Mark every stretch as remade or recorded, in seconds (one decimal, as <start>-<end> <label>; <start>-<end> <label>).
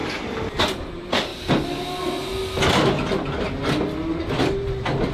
0.0-0.6 recorded; 0.6-1.3 remade; 1.3-4.4 recorded; 4.4-5.1 remade